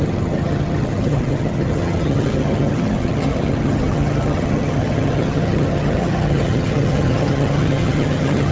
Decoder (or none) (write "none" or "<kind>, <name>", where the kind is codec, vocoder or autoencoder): vocoder, HiFi-GAN